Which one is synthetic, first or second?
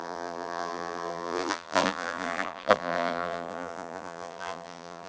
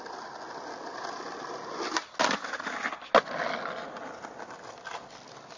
first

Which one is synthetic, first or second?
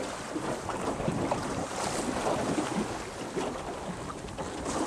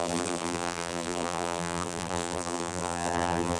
second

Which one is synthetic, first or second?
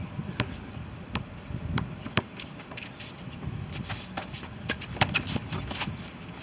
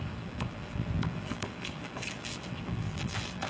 second